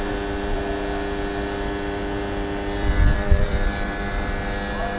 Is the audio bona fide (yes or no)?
no